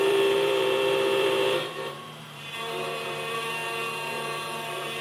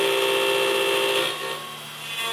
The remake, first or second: first